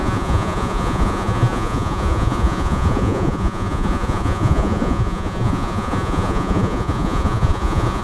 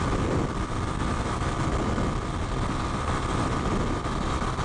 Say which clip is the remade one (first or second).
first